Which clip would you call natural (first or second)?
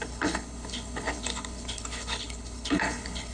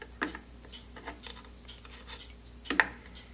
second